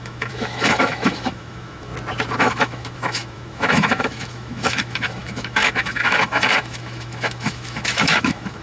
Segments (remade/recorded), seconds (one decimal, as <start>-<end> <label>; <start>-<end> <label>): 0.0-1.9 remade; 1.9-2.4 recorded; 2.4-8.6 remade